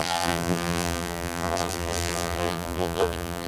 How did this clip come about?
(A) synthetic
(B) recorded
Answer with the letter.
A